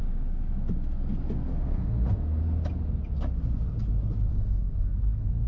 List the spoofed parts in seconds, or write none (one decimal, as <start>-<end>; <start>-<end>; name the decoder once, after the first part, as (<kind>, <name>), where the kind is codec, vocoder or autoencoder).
1.5-2.4 (codec, SNAC); 4.3-5.5